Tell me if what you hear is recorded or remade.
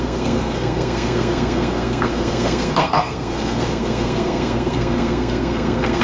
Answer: remade